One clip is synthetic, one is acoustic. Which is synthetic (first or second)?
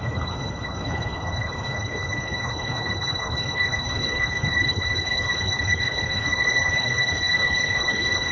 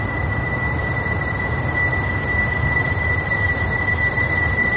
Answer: first